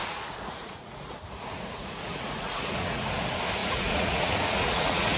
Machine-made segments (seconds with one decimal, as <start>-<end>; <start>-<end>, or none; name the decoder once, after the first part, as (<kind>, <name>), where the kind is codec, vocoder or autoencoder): 0.0-3.1 (vocoder, Vocos); 3.6-5.2